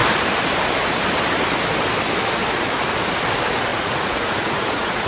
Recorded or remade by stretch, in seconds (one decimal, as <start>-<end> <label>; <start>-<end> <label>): 0.0-3.7 recorded; 3.7-5.1 remade